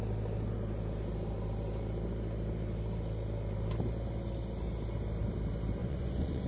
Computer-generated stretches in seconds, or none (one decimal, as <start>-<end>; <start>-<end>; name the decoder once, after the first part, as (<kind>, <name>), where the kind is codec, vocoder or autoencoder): 5.8-6.5 (vocoder, Vocos)